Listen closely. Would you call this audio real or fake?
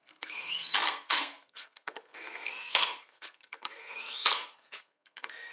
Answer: fake